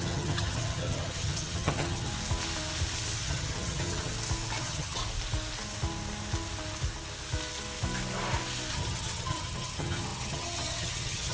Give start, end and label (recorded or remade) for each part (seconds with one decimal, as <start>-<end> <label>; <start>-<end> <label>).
0.0-2.1 remade; 2.1-3.2 recorded; 3.2-4.1 remade; 4.1-4.6 recorded; 4.6-5.0 remade; 5.0-8.7 recorded; 8.7-11.3 remade